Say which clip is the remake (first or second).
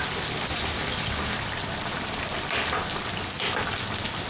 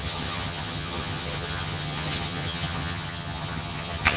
second